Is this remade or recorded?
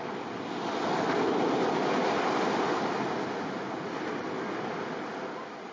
recorded